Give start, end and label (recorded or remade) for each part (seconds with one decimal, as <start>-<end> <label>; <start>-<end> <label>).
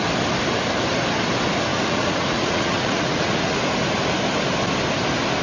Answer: 0.0-1.7 recorded; 1.7-3.6 remade; 3.6-5.4 recorded